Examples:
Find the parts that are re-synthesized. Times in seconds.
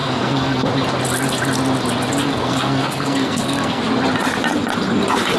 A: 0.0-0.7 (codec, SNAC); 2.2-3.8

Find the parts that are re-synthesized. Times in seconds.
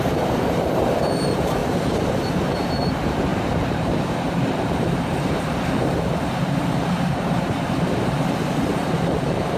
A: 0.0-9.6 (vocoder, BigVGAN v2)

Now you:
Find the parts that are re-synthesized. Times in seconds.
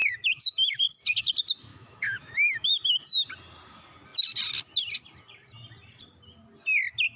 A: 0.0-0.9 (autoencoder, DAC-VAE); 1.7-2.7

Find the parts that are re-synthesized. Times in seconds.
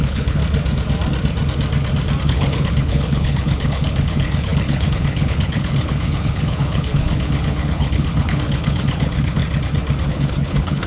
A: 0.0-0.4 (codec, HILCodec); 2.2-9.4; 10.1-10.9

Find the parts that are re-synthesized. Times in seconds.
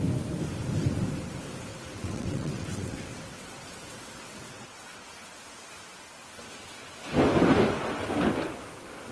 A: 1.7-5.1 (vocoder, WaveNeXt)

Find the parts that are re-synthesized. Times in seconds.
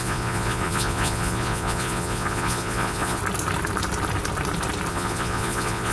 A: 0.0-3.2 (vocoder, Vocos); 4.9-5.9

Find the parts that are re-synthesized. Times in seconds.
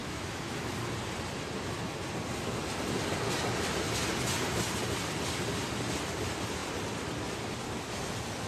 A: 0.0-0.7 (autoencoder, DAC-VAE)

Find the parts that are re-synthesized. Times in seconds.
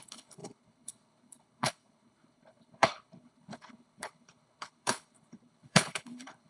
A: 0.0-6.5 (codec, HILCodec)